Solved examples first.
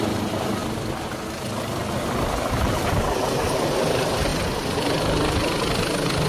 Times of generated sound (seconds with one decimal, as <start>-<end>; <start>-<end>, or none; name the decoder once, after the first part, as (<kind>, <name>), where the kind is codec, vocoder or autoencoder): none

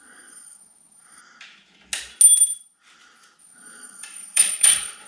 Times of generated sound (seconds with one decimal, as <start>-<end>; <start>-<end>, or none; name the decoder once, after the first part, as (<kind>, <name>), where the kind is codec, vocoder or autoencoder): 0.0-1.2 (vocoder, Vocos); 3.4-5.1

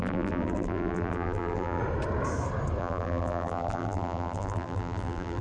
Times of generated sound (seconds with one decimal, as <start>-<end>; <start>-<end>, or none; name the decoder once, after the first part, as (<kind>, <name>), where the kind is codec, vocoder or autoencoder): 0.0-1.8 (vocoder, BigVGAN v2); 2.8-5.4

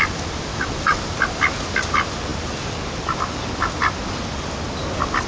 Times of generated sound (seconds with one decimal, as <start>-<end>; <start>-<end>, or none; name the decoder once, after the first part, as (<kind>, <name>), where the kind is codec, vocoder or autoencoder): 0.5-1.0 (autoencoder, DAC-VAE)

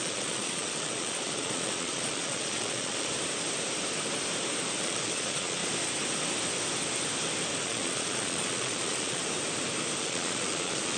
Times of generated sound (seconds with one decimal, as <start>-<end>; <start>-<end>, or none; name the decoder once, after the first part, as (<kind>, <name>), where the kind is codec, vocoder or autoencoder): 0.0-3.1 (vocoder, Vocos); 4.8-5.6; 7.6-9.2; 10.0-11.0

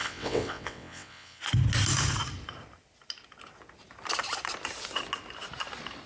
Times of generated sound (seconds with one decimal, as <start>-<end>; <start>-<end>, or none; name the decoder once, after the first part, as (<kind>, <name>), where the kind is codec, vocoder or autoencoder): 0.0-1.4 (vocoder, WaveNeXt)